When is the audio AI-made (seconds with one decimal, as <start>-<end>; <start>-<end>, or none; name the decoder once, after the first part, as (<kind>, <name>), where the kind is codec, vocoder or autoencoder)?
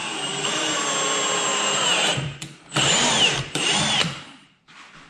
0.0-0.6 (vocoder, BigVGAN v2); 1.5-4.6